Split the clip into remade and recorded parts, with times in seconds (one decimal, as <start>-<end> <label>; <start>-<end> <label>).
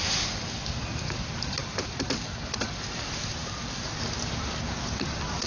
0.0-5.5 recorded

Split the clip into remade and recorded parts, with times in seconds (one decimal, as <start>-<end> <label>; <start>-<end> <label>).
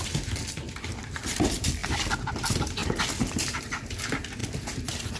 0.0-1.8 remade; 1.8-2.3 recorded; 2.3-2.8 remade; 2.8-3.6 recorded; 3.6-5.2 remade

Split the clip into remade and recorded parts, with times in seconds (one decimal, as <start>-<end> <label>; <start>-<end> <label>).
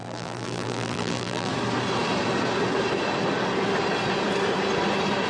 0.0-1.5 remade; 1.5-5.3 recorded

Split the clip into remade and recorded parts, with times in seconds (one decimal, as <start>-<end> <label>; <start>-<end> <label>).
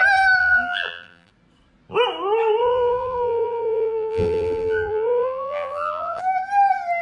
0.0-0.4 recorded; 0.4-1.3 remade; 1.3-2.6 recorded; 2.6-6.2 remade; 6.2-7.0 recorded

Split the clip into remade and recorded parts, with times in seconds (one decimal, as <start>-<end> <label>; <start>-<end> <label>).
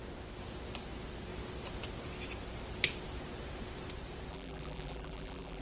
0.0-4.3 recorded; 4.3-5.6 remade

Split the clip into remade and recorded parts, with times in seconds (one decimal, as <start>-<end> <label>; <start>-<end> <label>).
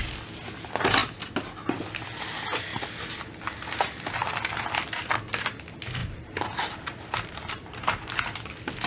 0.0-6.0 recorded; 6.0-8.5 remade; 8.5-8.9 recorded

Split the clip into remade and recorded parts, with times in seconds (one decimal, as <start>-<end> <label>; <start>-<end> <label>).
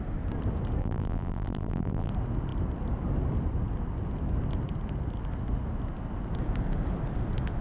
0.0-0.8 recorded; 0.8-2.1 remade; 2.1-7.6 recorded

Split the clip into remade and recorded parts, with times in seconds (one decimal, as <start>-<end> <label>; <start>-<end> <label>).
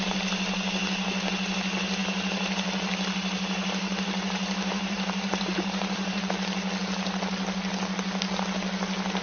0.0-2.0 recorded; 2.0-6.2 remade; 6.2-9.2 recorded